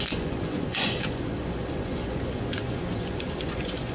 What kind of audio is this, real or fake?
fake